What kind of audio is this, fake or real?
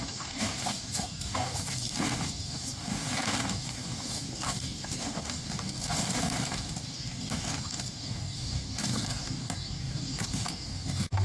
fake